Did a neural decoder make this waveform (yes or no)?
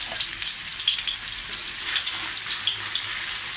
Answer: yes